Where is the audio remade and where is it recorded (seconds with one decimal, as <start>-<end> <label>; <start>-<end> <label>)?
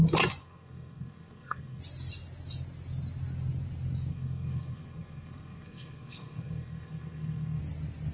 0.0-0.4 recorded; 0.4-1.8 remade; 1.8-4.1 recorded; 4.1-7.6 remade; 7.6-8.1 recorded